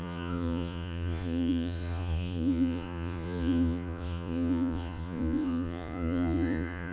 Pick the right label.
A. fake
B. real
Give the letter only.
A